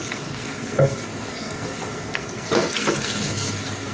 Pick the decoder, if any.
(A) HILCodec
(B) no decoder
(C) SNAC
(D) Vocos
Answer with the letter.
C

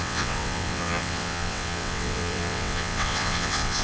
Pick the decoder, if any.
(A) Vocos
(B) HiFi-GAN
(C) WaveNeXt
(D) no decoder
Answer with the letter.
C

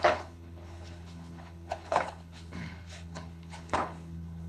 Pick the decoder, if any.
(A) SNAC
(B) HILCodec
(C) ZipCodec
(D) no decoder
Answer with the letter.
B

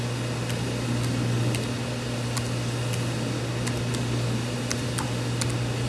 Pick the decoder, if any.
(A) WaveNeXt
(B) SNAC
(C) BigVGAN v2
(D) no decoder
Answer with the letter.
D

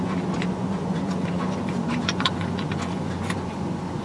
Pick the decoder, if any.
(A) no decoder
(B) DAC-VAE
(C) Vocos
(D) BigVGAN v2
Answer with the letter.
C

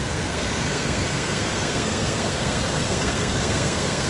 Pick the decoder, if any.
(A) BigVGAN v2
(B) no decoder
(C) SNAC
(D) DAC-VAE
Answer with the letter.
C